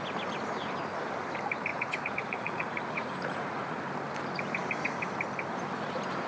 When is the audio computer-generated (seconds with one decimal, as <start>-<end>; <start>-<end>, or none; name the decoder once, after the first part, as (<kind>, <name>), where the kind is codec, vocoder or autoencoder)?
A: 1.7-3.8 (vocoder, Vocos)